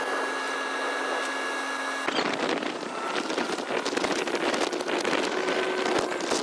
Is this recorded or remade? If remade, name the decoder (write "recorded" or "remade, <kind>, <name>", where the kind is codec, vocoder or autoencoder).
recorded